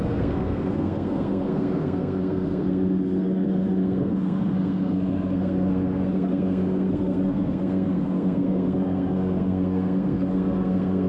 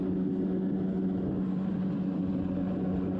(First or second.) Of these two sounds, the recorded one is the second